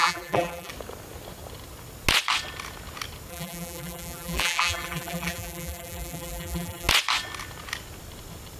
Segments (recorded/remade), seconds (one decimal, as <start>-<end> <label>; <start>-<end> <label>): 0.0-0.7 remade; 0.7-3.3 recorded; 3.3-6.9 remade; 6.9-8.6 recorded